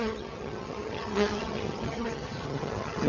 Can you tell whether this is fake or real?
fake